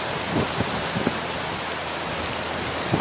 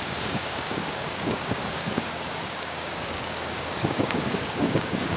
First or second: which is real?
first